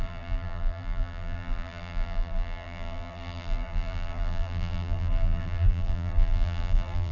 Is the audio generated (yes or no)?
yes